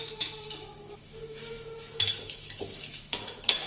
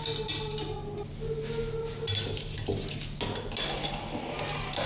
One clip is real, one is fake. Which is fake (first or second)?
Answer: first